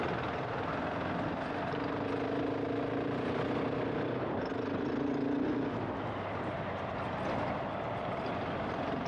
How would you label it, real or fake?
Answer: real